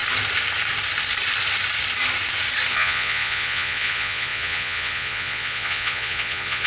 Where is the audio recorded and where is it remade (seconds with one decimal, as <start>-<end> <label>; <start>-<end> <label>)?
0.0-2.7 recorded; 2.7-6.7 remade